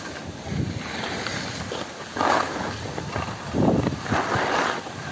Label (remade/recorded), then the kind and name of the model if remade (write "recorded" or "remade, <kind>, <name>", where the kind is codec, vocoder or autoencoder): recorded